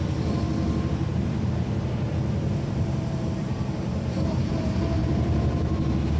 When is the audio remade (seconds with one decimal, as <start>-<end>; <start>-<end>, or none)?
1.1-4.6; 5.0-6.2